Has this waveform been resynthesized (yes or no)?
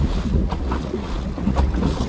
yes